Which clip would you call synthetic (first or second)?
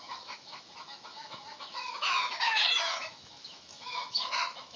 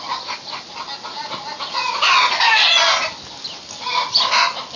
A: first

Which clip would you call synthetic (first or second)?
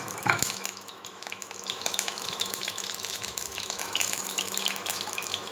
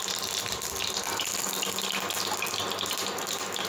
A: first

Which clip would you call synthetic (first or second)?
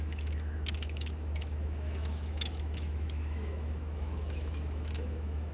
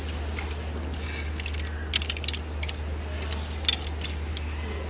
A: first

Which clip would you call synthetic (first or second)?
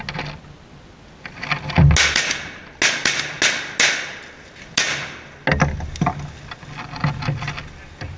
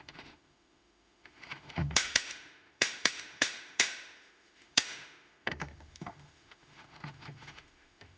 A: second